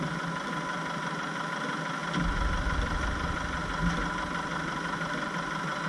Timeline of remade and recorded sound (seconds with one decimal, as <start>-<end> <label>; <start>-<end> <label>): 0.0-5.9 recorded